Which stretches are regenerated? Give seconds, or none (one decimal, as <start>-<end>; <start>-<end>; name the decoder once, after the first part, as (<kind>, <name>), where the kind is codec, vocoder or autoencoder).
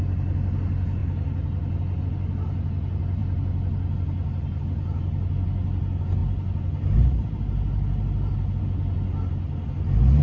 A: none